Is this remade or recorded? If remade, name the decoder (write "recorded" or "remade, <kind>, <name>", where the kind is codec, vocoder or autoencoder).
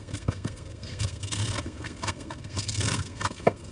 remade, codec, SNAC